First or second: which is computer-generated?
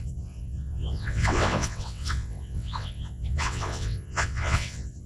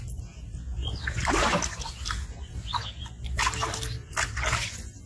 first